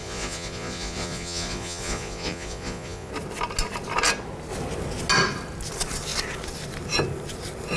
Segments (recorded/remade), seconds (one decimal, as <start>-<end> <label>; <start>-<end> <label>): 0.0-3.1 remade; 3.1-7.8 recorded